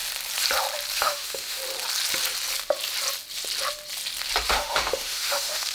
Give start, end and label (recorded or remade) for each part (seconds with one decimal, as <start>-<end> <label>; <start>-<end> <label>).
0.0-1.0 recorded; 1.0-1.6 remade; 1.6-4.5 recorded; 4.5-5.7 remade